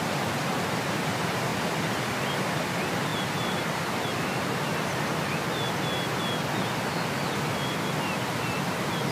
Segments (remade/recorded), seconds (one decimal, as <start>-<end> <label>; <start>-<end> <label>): 0.0-9.1 recorded